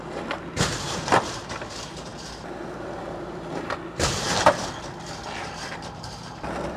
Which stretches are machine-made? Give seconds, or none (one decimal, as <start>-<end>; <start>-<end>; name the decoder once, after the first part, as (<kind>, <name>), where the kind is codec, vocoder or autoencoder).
none